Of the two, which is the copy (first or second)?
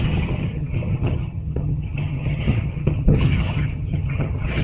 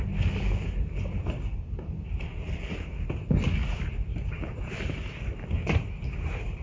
first